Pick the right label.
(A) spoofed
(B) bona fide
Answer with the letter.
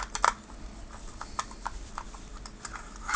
B